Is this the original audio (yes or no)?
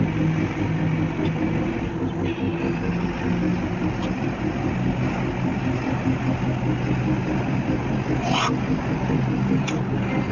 yes